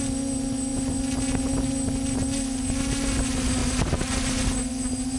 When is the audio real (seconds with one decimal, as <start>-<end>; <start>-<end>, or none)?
0.0-5.2